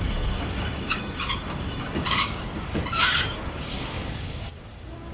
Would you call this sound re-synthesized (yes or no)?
yes